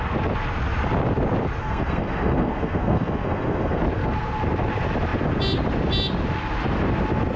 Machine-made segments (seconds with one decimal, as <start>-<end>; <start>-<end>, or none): 1.6-3.8